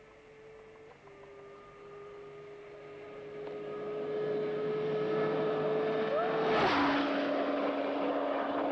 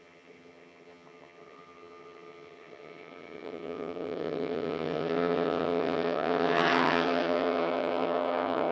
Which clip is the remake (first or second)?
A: second